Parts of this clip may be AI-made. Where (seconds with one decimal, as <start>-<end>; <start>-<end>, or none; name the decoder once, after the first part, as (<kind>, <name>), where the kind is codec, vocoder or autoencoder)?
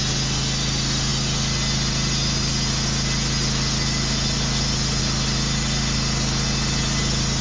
none